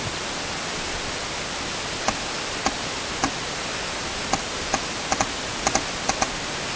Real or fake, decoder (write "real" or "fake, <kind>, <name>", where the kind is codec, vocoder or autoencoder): real